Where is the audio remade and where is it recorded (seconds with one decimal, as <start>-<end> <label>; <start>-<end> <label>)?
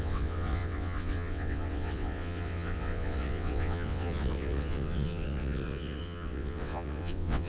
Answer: 0.0-7.5 remade